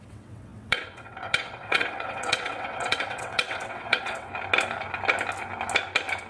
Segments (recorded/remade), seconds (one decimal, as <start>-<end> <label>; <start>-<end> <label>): 0.0-4.3 remade; 4.3-6.3 recorded